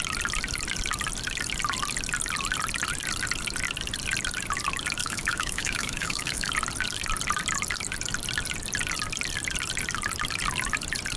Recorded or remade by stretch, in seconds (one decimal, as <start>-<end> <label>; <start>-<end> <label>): 0.0-5.0 recorded; 5.0-6.5 remade; 6.5-11.2 recorded